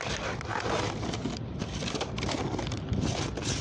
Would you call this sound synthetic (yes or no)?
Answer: no